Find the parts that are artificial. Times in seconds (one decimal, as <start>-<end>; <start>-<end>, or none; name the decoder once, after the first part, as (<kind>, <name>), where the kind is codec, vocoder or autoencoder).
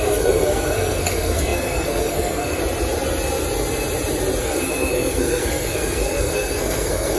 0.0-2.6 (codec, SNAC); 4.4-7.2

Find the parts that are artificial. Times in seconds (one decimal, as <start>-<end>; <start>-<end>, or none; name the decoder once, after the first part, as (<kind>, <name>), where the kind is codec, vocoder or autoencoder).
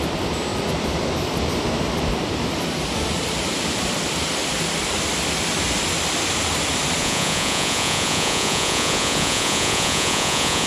7.0-10.7 (vocoder, Vocos)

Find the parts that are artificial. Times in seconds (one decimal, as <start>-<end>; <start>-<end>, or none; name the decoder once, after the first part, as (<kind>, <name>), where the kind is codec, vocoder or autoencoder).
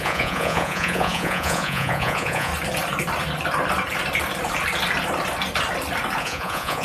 0.0-2.5 (vocoder, Vocos); 6.2-6.8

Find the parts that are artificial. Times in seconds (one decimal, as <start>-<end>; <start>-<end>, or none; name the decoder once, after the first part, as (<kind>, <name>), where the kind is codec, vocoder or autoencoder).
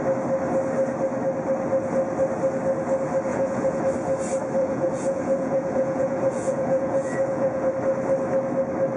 3.3-3.8 (vocoder, Vocos); 4.6-7.7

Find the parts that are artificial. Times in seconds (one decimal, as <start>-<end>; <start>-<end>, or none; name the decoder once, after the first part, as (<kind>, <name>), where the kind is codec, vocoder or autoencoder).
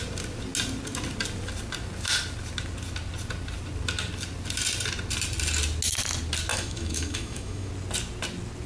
6.5-7.7 (autoencoder, DAC-VAE)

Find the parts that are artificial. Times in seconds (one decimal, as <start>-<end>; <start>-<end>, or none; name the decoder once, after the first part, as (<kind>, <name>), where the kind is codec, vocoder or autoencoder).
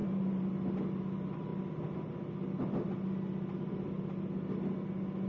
0.0-0.5 (vocoder, BigVGAN v2)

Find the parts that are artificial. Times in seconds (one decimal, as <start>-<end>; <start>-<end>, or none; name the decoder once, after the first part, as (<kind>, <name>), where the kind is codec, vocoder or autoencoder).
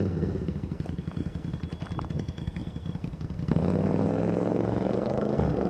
0.0-1.6 (codec, SNAC); 2.1-5.7